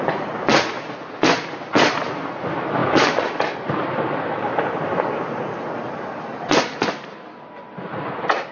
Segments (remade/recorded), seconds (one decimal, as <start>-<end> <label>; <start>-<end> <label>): 0.0-8.5 recorded